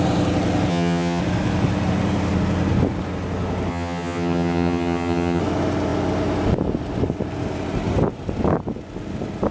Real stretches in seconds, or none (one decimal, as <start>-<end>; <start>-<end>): 0.0-0.7; 1.2-3.7; 5.4-9.5